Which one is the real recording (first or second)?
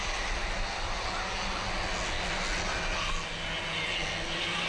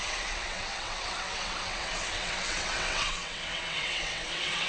first